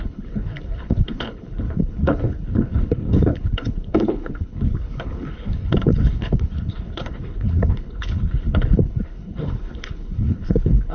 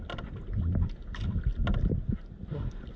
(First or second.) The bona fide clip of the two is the second